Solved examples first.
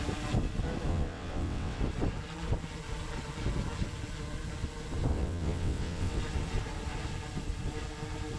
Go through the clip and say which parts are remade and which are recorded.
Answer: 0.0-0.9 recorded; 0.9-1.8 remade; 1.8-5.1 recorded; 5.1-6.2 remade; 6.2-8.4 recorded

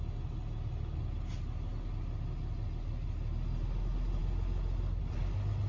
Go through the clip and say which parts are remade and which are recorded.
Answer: 0.0-5.7 recorded

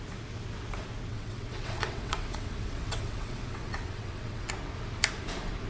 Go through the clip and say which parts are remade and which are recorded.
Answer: 0.0-1.1 recorded; 1.1-4.5 remade; 4.5-5.7 recorded

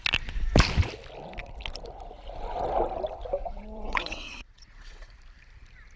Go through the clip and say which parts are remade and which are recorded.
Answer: 0.0-3.4 recorded; 3.4-5.1 remade; 5.1-6.0 recorded

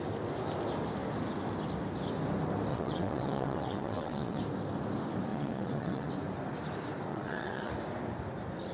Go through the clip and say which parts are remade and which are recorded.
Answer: 0.0-2.7 recorded; 2.7-4.4 remade; 4.4-5.3 recorded; 5.3-6.1 remade; 6.1-7.1 recorded; 7.1-7.7 remade; 7.7-8.7 recorded

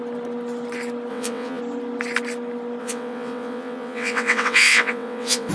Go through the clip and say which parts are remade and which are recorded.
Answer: 0.0-1.1 recorded; 1.1-1.6 remade; 1.6-2.8 recorded; 2.8-5.5 remade

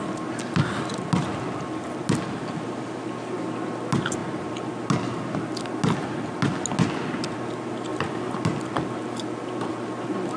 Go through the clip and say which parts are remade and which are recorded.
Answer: 0.0-10.4 recorded